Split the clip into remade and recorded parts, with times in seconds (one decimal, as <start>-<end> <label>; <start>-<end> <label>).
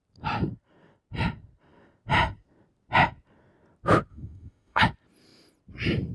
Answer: 0.0-4.1 recorded; 4.1-4.8 remade; 4.8-6.1 recorded